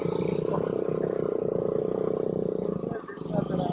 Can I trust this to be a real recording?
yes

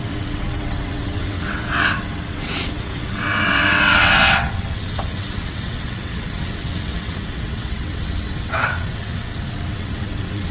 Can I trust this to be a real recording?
no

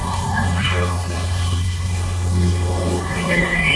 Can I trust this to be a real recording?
no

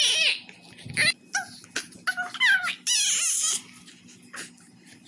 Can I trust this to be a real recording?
yes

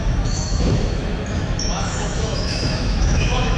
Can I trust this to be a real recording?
no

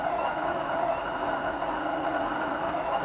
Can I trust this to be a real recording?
no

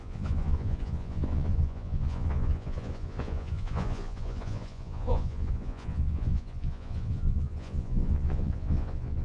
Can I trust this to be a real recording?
no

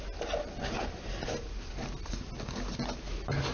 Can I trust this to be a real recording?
yes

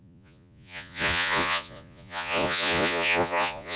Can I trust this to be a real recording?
no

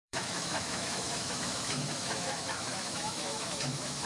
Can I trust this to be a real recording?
no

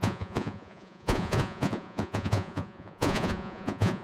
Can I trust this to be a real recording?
no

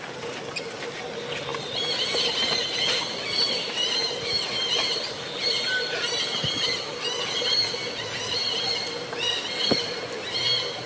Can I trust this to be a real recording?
yes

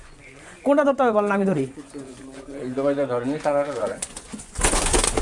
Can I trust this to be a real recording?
no